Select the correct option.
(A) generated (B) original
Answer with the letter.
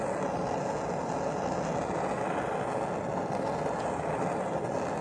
B